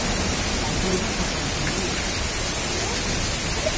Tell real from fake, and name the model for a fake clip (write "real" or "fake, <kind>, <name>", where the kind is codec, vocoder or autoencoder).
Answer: real